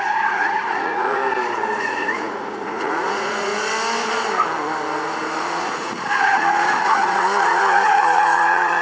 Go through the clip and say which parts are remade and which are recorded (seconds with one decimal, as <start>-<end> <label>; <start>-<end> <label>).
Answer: 0.0-1.2 remade; 1.2-1.8 recorded; 1.8-3.5 remade; 3.5-5.4 recorded; 5.4-8.8 remade